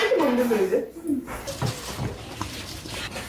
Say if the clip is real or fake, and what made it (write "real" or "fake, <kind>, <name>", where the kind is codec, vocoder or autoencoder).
real